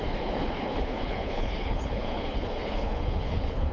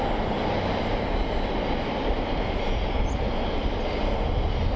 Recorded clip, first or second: second